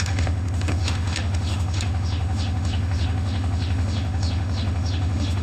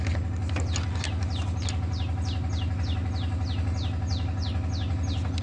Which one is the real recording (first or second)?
second